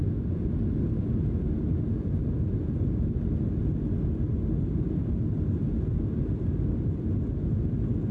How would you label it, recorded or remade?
recorded